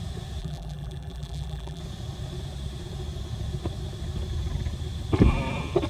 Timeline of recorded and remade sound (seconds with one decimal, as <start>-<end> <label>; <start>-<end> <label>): 0.0-0.4 recorded; 0.4-1.8 remade; 1.8-5.9 recorded